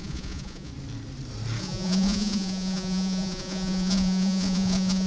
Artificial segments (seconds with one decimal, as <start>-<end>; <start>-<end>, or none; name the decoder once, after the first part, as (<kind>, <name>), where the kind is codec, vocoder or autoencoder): 0.0-0.7 (vocoder, Vocos); 1.6-5.1